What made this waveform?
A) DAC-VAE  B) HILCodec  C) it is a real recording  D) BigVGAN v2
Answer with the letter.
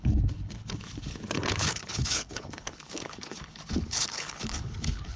B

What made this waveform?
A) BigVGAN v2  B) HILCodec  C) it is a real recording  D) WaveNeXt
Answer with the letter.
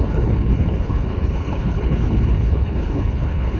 B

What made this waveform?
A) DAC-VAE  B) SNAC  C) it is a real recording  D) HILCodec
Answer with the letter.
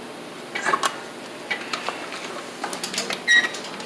C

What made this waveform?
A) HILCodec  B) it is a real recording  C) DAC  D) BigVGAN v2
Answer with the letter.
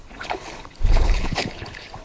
A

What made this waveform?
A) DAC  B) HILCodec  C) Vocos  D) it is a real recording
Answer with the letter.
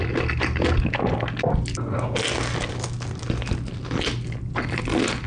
D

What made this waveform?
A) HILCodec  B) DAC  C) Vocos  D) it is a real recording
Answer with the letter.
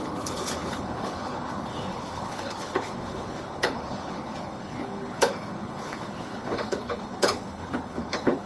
A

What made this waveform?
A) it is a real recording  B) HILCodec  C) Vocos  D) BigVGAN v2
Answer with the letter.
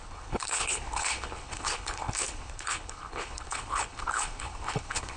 B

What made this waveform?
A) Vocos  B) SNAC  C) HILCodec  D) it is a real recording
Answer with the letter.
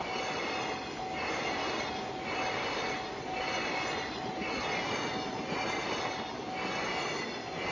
D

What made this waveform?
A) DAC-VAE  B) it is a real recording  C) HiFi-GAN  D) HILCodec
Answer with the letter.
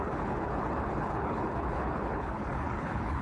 D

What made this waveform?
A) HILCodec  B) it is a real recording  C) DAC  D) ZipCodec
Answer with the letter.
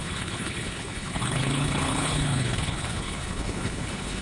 A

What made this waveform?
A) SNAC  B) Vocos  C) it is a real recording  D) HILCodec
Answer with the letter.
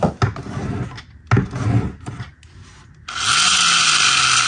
C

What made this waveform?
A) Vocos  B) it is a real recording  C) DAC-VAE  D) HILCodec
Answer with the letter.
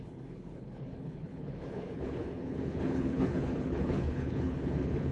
D